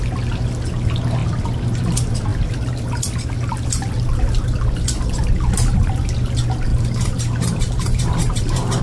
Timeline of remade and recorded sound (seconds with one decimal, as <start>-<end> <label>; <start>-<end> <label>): 0.0-6.7 recorded; 6.7-8.8 remade